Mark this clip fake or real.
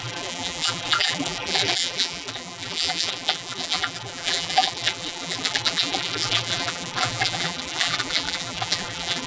fake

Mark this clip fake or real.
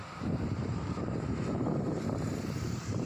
fake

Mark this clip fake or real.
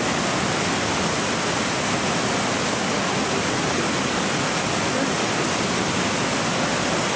real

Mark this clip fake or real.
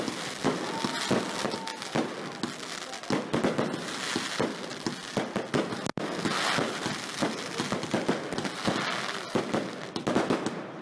real